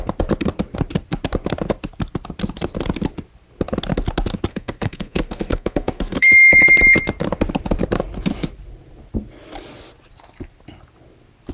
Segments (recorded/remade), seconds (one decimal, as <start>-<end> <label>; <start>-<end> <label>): 0.0-4.5 recorded; 4.5-6.5 remade; 6.5-11.5 recorded

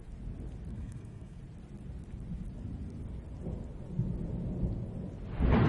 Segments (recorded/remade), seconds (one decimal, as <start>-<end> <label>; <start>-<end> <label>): 0.0-0.7 recorded; 0.7-1.4 remade; 1.4-5.7 recorded

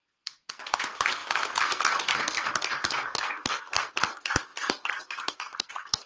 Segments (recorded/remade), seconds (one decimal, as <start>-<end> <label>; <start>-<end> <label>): 0.0-6.1 remade